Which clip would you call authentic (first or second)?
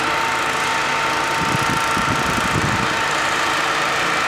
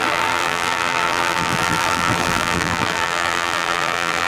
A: first